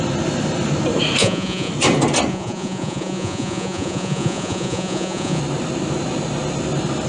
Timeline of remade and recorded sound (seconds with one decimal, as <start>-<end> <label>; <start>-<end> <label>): 0.0-1.2 recorded; 1.2-1.7 remade; 1.7-2.3 recorded; 2.3-5.4 remade; 5.4-7.1 recorded